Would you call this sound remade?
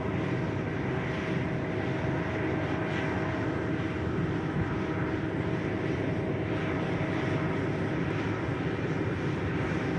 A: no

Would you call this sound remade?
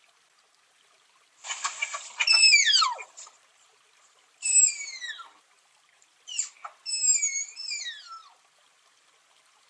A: no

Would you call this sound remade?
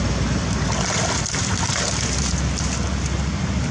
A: no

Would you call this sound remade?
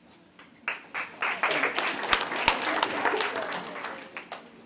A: no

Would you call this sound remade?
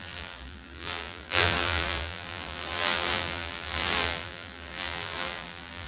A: yes